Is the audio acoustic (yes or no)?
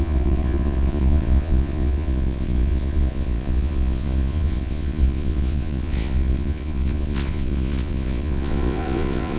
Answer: no